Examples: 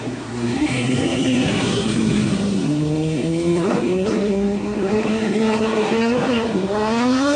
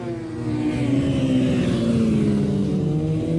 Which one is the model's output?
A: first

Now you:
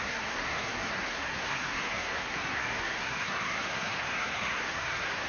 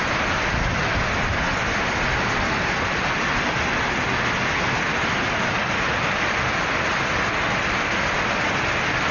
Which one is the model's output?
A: first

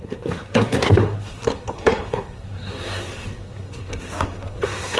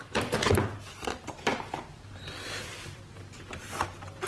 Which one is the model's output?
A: first